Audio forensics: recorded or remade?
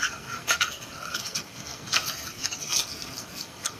remade